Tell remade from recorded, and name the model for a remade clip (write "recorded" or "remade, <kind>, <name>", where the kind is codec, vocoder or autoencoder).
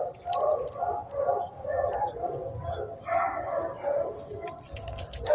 recorded